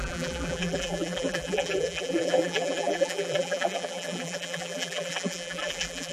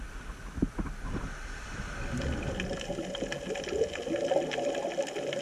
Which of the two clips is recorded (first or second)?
second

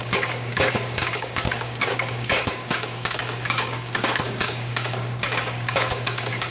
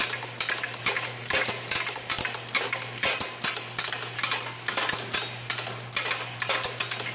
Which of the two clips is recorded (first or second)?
second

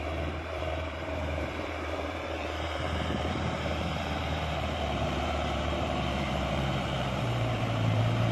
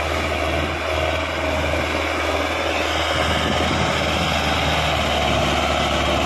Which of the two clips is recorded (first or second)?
second